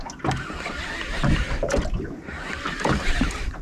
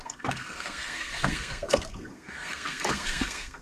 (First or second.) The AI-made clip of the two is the second